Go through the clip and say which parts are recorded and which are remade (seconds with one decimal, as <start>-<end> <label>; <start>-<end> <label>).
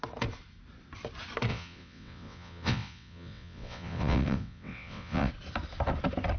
0.0-1.5 recorded; 1.5-5.3 remade; 5.3-6.4 recorded